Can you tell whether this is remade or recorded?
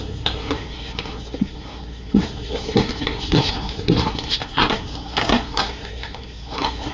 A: remade